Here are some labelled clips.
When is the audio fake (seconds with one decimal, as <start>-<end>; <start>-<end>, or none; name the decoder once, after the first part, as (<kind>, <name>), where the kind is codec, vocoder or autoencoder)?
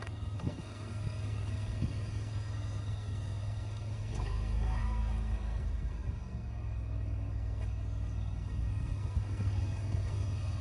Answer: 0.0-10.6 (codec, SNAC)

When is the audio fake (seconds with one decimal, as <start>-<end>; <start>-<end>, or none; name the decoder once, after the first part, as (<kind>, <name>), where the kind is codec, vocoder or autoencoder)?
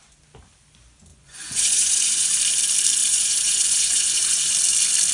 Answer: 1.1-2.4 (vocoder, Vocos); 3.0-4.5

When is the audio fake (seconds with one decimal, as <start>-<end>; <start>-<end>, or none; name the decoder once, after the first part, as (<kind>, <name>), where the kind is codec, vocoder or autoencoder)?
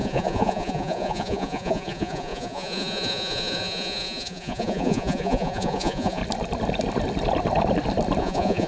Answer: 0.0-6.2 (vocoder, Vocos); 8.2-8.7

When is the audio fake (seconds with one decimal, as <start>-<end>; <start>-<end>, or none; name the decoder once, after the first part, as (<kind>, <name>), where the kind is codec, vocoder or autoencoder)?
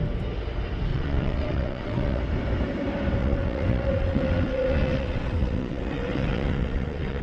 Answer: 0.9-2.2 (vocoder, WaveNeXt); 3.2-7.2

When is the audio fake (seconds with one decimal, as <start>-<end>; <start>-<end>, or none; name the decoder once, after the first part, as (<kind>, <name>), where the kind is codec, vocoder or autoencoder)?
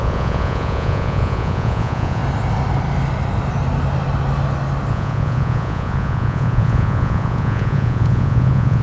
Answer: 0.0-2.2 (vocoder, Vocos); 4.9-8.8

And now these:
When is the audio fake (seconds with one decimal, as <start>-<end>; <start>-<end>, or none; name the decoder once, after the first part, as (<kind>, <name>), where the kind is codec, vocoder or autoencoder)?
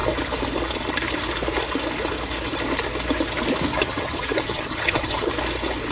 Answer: 3.7-5.3 (vocoder, HiFi-GAN)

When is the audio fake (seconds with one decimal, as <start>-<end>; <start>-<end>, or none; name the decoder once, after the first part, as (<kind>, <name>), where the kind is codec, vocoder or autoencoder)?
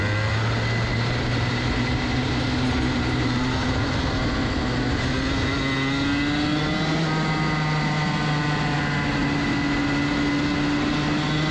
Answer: 0.9-4.1 (vocoder, BigVGAN v2)